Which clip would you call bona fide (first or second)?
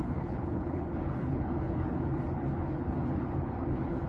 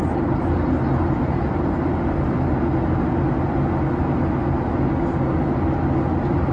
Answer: second